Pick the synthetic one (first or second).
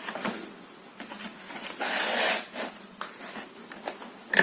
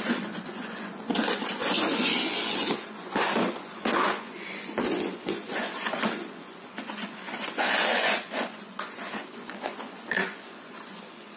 second